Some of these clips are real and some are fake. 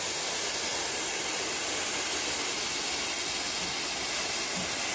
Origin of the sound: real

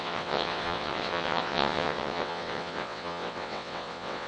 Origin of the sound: fake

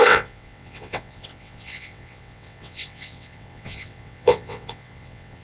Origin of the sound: fake